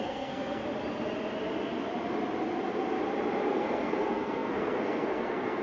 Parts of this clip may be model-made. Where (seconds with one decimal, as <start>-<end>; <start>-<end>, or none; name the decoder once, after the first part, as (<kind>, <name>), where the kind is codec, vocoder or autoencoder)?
0.0-0.6 (codec, SNAC); 3.5-5.6